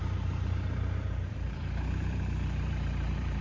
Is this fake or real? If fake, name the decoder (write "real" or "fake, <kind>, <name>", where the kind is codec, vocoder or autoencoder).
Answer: fake, vocoder, BigVGAN v2